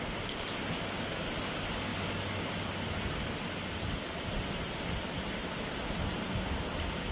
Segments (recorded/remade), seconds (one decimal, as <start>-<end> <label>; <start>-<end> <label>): 0.0-7.1 recorded